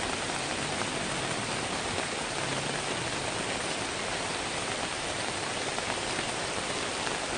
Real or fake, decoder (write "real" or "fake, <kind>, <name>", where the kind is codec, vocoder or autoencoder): real